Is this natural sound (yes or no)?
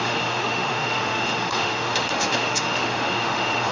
no